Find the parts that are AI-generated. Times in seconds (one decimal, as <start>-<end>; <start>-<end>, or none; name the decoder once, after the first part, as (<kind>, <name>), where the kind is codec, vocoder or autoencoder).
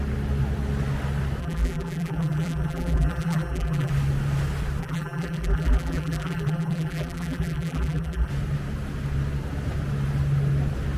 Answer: 1.4-3.9 (vocoder, BigVGAN v2); 4.8-8.3